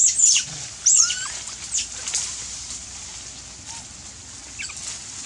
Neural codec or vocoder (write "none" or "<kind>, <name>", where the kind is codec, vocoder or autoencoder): none